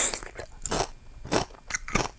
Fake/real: real